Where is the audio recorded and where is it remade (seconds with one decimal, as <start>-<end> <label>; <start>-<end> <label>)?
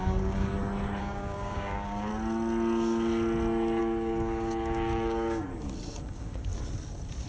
0.0-0.5 remade; 0.5-1.0 recorded; 1.0-2.1 remade; 2.1-3.8 recorded; 3.8-5.5 remade; 5.5-6.1 recorded; 6.1-6.5 remade; 6.5-7.3 recorded